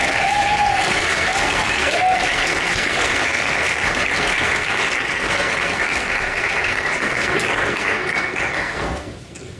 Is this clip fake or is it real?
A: fake